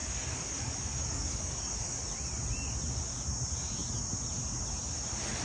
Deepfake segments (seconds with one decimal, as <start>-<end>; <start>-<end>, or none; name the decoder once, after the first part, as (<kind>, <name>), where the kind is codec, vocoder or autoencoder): 0.0-2.0 (codec, DAC)